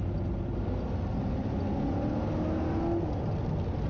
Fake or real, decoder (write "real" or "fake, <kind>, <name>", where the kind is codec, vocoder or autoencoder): real